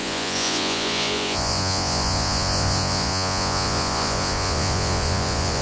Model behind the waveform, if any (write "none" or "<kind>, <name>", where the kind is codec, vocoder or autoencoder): vocoder, Vocos